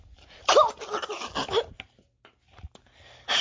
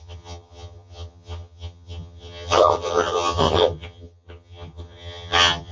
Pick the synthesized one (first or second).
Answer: second